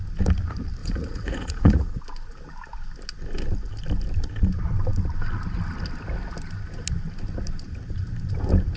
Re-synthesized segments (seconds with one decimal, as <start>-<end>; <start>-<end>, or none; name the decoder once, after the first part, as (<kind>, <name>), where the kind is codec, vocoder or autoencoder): 0.8-2.0 (vocoder, Vocos)